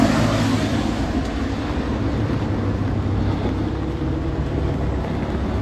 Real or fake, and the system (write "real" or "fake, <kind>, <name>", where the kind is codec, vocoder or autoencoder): real